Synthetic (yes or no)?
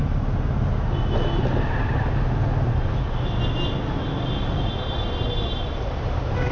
no